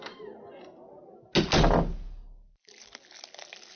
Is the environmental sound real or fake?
real